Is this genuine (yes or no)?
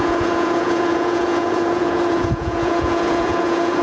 no